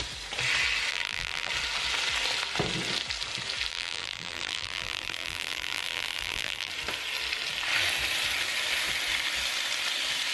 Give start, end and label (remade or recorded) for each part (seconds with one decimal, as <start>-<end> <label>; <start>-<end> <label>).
0.0-0.9 recorded; 0.9-1.5 remade; 1.5-3.7 recorded; 3.7-6.7 remade; 6.7-10.3 recorded